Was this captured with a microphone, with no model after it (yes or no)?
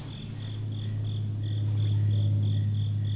yes